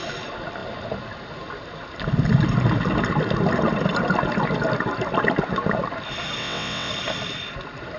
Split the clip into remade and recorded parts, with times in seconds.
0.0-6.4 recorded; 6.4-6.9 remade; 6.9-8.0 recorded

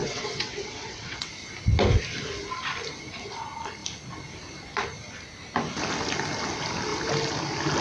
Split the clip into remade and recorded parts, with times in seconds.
0.0-1.3 remade; 1.3-7.8 recorded